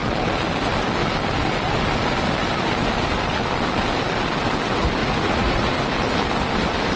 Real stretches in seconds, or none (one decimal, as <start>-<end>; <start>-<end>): 0.0-5.0; 5.7-7.0